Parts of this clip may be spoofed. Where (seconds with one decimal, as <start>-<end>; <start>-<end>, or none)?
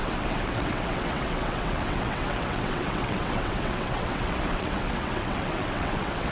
0.0-6.3